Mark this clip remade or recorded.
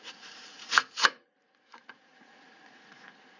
remade